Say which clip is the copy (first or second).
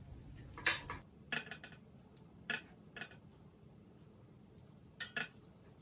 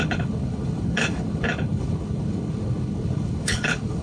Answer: second